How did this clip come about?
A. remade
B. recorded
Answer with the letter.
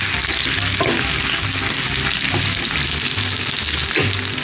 B